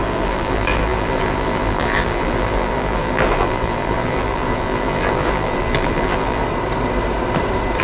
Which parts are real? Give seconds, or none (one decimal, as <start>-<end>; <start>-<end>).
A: 6.4-7.8